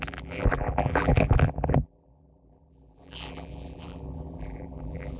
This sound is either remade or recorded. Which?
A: remade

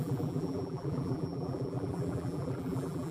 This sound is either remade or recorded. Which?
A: remade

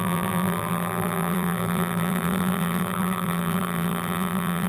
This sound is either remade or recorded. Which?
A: remade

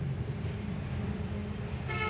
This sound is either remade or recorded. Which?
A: remade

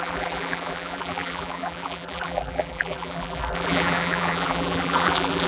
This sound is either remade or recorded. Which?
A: remade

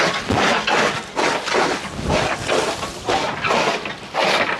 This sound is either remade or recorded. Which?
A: recorded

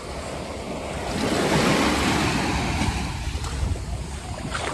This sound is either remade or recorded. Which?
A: recorded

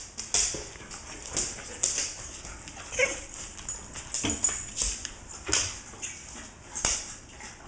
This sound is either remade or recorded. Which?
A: recorded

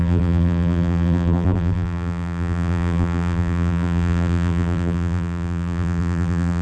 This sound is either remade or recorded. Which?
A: remade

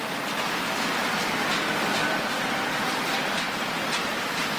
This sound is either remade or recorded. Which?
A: remade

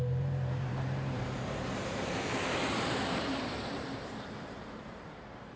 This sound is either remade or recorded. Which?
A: remade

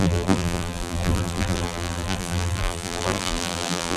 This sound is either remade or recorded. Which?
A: remade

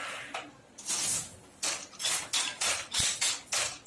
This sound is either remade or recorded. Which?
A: recorded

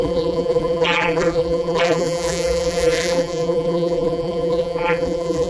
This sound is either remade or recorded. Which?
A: remade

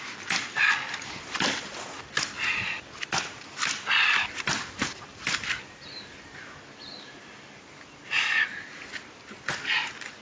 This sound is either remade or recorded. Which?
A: recorded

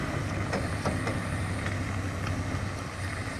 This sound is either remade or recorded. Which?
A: recorded